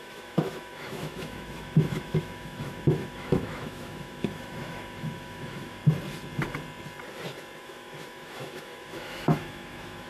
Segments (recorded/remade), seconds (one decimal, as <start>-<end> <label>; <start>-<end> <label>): 0.0-5.8 remade; 5.8-7.6 recorded; 7.6-10.1 remade